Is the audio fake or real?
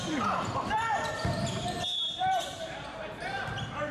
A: fake